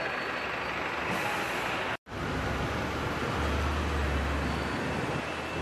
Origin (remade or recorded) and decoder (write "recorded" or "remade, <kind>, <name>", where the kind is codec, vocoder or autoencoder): recorded